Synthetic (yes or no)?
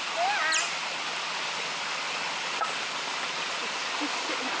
no